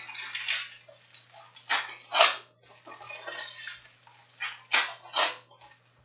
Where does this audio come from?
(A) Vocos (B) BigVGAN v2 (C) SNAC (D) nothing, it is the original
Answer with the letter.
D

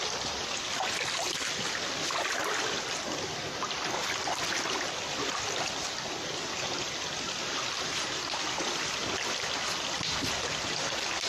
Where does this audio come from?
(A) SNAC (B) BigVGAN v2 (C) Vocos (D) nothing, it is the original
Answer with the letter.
D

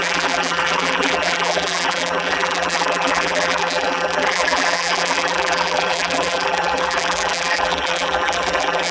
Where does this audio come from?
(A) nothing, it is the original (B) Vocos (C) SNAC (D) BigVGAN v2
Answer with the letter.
D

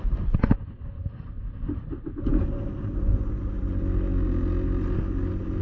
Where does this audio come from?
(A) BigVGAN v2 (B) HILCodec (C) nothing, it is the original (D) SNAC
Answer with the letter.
C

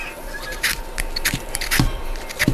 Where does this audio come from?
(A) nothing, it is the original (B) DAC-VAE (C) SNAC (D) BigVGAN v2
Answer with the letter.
D